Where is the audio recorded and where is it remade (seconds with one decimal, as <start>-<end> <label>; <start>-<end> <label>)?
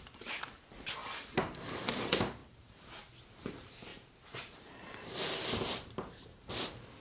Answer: 0.0-1.0 recorded; 1.0-1.6 remade; 1.6-2.4 recorded; 2.4-3.1 remade; 3.1-3.9 recorded; 3.9-6.5 remade; 6.5-7.0 recorded